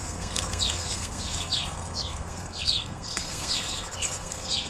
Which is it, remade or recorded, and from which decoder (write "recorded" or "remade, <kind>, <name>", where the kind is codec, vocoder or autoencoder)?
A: remade, codec, SNAC